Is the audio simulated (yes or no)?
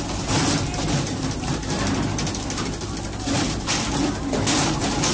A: no